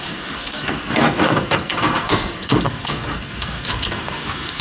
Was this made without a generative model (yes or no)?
no